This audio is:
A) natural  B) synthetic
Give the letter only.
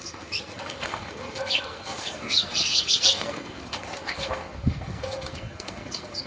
B